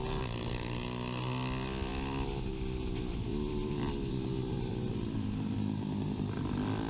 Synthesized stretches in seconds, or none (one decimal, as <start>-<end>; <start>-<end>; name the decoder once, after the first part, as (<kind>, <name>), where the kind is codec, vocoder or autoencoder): 3.3-5.7 (vocoder, BigVGAN v2)